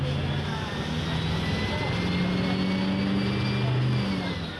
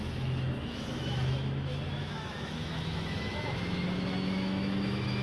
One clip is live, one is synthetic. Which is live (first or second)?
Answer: first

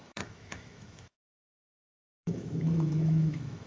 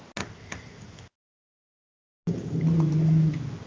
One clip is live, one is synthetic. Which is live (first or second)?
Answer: second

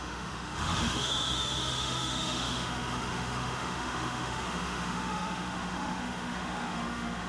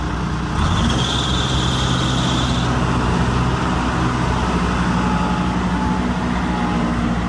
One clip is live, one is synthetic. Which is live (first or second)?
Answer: second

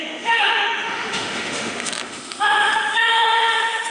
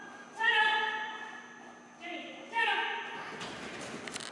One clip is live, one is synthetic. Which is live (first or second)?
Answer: second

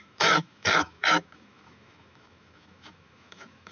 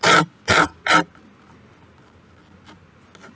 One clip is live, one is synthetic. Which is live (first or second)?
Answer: second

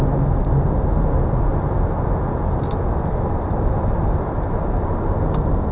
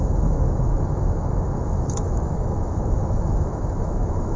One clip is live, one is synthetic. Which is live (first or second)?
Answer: first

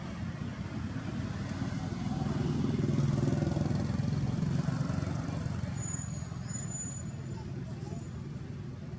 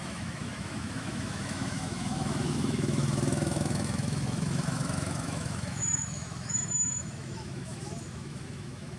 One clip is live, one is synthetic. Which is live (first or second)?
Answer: first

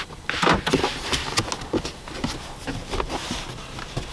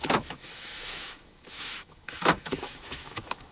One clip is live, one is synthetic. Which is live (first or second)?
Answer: first